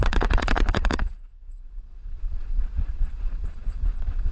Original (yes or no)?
no